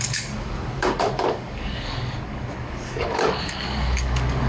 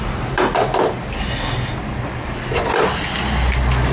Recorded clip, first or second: second